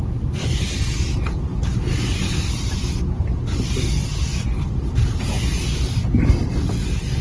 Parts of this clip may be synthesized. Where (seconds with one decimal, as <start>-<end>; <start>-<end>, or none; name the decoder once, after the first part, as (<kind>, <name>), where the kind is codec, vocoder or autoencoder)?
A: none